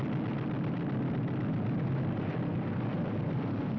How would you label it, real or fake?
real